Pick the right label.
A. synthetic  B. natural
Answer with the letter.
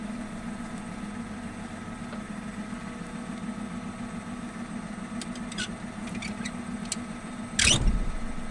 B